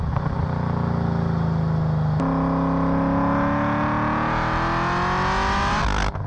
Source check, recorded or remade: recorded